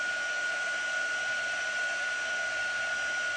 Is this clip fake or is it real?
real